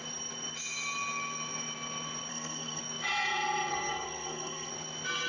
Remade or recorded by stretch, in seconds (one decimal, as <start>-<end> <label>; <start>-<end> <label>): 0.0-2.3 recorded; 2.3-2.8 remade; 2.8-3.7 recorded; 3.7-4.7 remade; 4.7-5.3 recorded